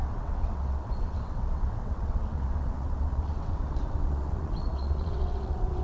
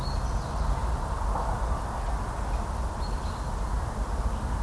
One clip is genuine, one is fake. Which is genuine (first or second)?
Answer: second